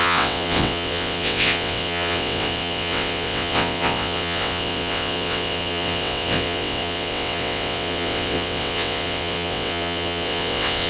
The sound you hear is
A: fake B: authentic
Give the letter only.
A